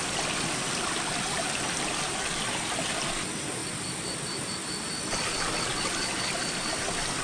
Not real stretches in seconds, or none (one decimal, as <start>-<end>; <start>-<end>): none